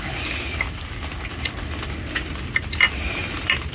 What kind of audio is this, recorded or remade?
recorded